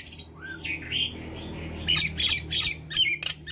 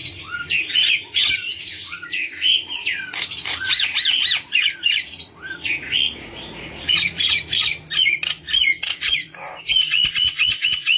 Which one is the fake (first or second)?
second